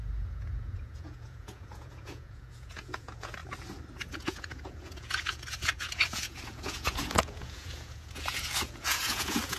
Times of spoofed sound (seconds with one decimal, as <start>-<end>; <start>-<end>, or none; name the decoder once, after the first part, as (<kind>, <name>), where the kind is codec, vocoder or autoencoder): 0.0-3.4 (vocoder, Vocos); 4.0-9.6